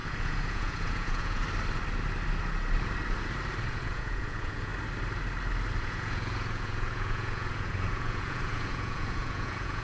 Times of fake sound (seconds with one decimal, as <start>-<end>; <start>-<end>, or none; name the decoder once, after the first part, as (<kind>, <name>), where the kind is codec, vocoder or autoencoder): 0.0-1.4 (vocoder, Vocos); 3.7-4.7; 5.8-9.8